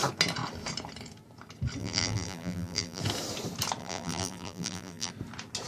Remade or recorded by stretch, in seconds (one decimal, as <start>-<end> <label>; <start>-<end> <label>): 0.0-1.8 recorded; 1.8-3.0 remade; 3.0-3.8 recorded; 3.8-5.1 remade; 5.1-5.7 recorded